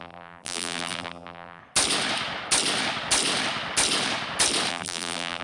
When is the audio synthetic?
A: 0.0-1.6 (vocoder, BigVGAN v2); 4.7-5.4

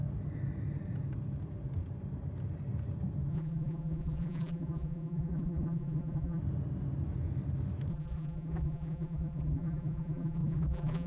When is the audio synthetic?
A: 3.3-6.4 (vocoder, BigVGAN v2); 7.9-11.1

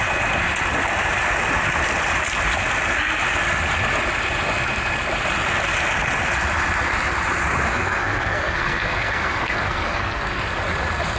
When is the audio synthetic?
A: 7.7-10.4 (codec, SNAC)